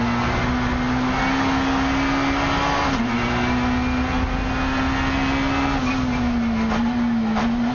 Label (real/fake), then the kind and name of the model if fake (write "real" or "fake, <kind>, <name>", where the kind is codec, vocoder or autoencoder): real